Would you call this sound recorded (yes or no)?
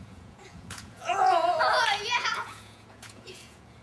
no